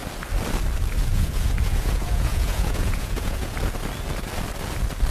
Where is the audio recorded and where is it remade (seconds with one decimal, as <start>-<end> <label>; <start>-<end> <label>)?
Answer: 0.0-1.1 recorded; 1.1-3.5 remade; 3.5-5.1 recorded